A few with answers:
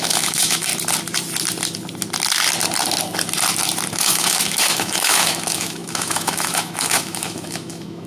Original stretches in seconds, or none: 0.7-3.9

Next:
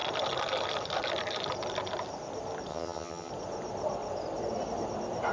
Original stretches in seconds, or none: 0.0-2.7; 3.3-5.3